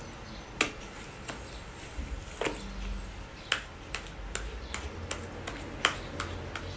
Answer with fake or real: real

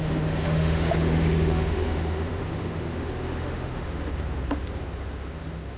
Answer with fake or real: fake